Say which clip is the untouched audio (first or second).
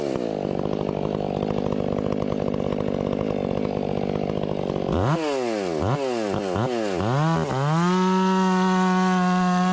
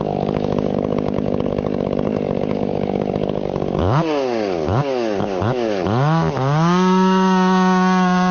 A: first